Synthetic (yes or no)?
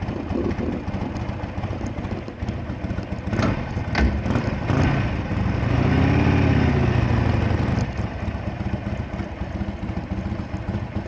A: no